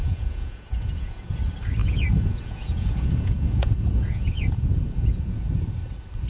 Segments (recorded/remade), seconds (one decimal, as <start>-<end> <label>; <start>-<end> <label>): 0.0-1.3 remade; 1.3-1.8 recorded; 1.8-5.6 remade; 5.6-6.3 recorded